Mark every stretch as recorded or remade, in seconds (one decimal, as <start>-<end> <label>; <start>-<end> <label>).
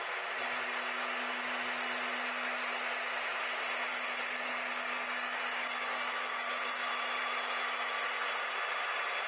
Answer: 0.0-3.9 recorded; 3.9-6.9 remade; 6.9-9.3 recorded